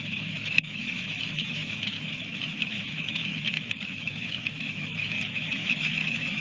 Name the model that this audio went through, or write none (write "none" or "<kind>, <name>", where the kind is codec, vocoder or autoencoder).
autoencoder, DAC-VAE